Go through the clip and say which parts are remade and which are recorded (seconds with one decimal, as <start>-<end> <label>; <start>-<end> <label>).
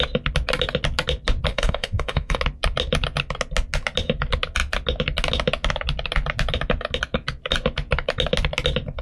0.0-1.5 recorded; 1.5-2.4 remade; 2.4-9.0 recorded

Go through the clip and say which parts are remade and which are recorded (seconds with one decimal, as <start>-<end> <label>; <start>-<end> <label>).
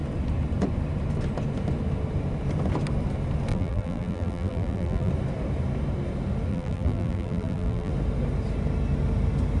0.0-3.5 recorded; 3.5-5.1 remade; 5.1-6.5 recorded; 6.5-7.9 remade; 7.9-9.6 recorded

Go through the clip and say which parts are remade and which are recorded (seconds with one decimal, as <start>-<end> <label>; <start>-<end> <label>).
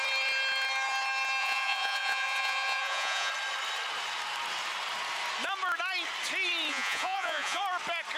0.0-1.4 recorded; 1.4-3.3 remade; 3.3-6.7 recorded; 6.7-7.6 remade; 7.6-8.2 recorded